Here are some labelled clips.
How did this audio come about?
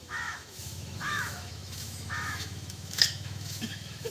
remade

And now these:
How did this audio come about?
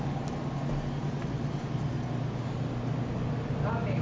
recorded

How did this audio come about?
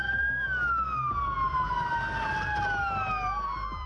recorded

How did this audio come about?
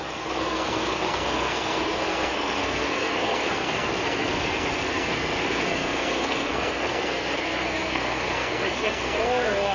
remade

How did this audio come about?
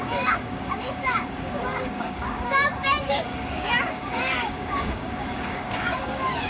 remade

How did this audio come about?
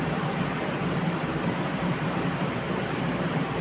remade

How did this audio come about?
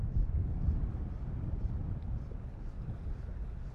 recorded